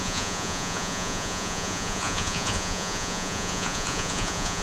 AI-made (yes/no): yes